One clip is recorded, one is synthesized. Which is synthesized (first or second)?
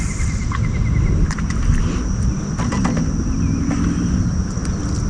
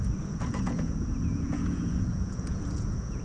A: second